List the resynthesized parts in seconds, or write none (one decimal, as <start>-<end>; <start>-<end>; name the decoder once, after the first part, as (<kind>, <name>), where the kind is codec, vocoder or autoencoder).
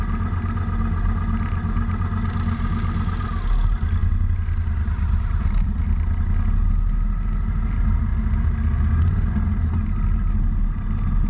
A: none